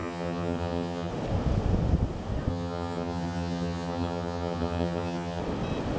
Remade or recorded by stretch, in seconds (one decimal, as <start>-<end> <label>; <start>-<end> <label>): 0.0-1.1 remade; 1.1-2.5 recorded; 2.5-5.4 remade; 5.4-6.0 recorded